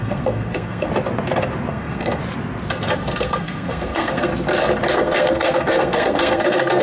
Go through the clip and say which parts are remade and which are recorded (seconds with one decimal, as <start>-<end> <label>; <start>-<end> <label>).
0.0-0.9 remade; 0.9-1.7 recorded; 1.7-2.2 remade; 2.2-2.7 recorded; 2.7-4.3 remade; 4.3-4.9 recorded; 4.9-6.8 remade

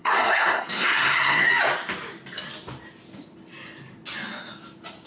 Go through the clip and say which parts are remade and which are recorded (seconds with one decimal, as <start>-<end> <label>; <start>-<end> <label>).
0.0-1.5 remade; 1.5-5.1 recorded

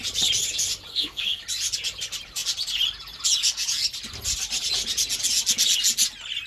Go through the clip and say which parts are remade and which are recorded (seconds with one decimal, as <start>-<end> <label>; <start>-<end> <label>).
0.0-0.9 recorded; 0.9-1.4 remade; 1.4-6.5 recorded

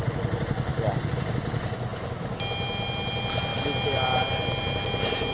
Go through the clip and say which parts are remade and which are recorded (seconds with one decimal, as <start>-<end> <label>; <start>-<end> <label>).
0.0-5.3 recorded

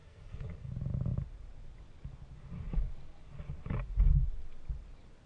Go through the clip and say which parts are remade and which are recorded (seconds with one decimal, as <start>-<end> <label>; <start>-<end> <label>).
0.0-0.7 remade; 0.7-5.3 recorded

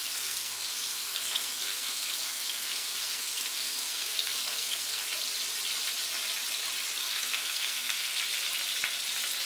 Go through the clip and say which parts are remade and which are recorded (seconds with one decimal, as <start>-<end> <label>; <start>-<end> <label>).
0.0-5.0 remade; 5.0-7.0 recorded; 7.0-8.2 remade; 8.2-9.5 recorded